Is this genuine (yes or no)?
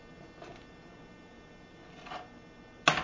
yes